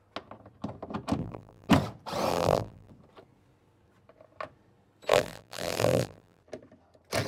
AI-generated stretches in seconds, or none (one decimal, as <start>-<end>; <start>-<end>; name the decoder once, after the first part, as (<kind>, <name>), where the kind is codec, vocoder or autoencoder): 1.2-1.7 (vocoder, BigVGAN v2); 2.3-2.9; 5.1-6.4